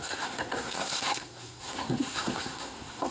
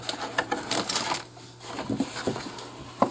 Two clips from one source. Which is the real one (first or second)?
second